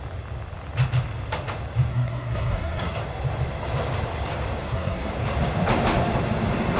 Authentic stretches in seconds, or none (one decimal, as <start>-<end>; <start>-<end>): 0.0-1.9; 3.0-4.6; 5.1-6.8